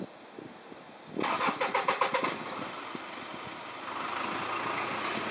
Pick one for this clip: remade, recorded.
recorded